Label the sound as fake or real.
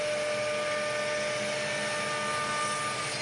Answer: real